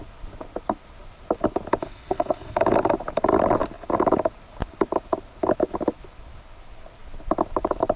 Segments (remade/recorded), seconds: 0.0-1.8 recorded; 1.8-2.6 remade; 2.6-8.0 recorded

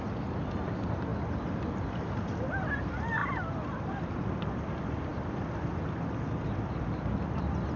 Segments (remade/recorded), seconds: 0.0-3.2 recorded; 3.2-4.1 remade; 4.1-5.1 recorded; 5.1-6.4 remade; 6.4-7.8 recorded

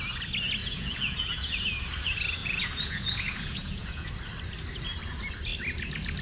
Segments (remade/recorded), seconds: 0.0-0.6 recorded; 0.6-1.6 remade; 1.6-2.4 recorded; 2.4-4.1 remade; 4.1-6.2 recorded